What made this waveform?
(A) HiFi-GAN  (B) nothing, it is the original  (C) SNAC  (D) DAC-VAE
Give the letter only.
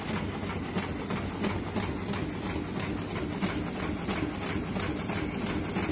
B